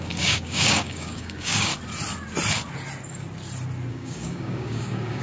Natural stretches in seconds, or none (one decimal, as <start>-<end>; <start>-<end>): 1.7-3.9